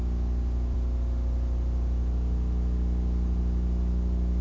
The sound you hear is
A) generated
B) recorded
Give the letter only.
B